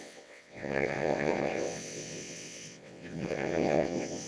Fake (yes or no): yes